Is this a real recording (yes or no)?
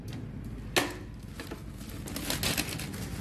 yes